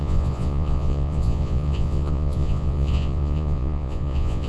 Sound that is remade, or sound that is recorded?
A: remade